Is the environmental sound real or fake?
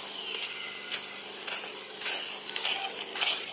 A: real